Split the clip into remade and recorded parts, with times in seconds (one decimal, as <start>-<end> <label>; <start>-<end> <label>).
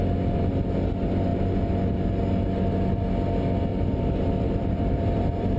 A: 0.0-3.7 recorded; 3.7-5.6 remade